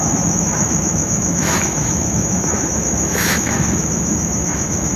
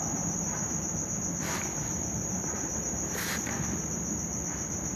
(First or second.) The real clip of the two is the second